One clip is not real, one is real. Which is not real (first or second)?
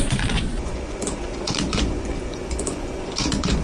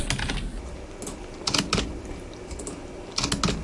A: first